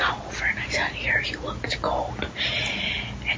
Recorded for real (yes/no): yes